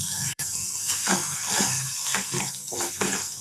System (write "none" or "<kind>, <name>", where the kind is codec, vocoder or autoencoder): codec, SNAC